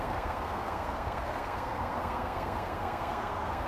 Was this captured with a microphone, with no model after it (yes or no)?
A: no